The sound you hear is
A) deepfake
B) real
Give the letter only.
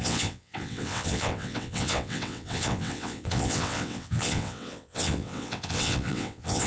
A